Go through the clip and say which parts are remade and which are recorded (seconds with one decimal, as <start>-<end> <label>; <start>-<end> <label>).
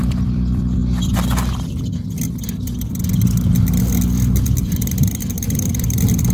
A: 0.0-0.8 remade; 0.8-4.6 recorded; 4.6-6.3 remade